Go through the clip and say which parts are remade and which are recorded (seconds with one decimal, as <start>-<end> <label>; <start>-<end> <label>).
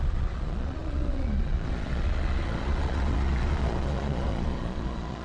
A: 0.0-5.2 remade